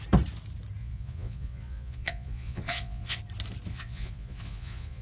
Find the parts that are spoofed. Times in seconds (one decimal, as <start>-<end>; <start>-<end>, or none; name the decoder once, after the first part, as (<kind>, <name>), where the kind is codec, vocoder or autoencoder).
0.8-3.2 (vocoder, Vocos); 3.7-5.0